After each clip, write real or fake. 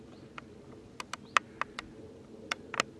real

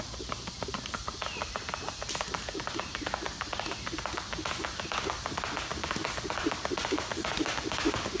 real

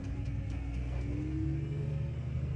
fake